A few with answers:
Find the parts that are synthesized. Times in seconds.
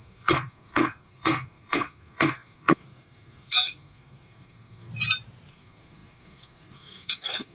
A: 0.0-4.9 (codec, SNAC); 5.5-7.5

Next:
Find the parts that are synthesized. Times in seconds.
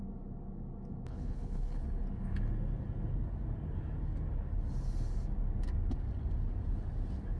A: 1.1-1.8 (codec, HILCodec)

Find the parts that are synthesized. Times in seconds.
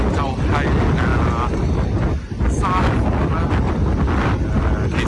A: none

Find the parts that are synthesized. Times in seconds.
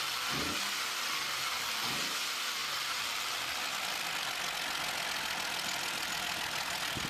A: none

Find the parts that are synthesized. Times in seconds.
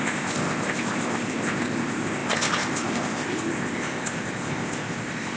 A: 0.0-5.4 (codec, ZipCodec)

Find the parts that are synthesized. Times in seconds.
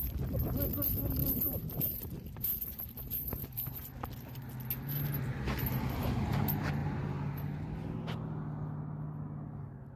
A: 1.2-4.5 (vocoder, BigVGAN v2)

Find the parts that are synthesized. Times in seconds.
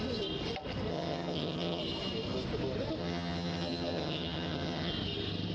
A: 0.9-1.8 (vocoder, HiFi-GAN); 3.0-4.9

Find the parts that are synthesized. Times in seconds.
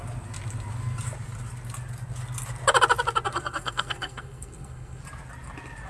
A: 3.3-5.0 (codec, SNAC)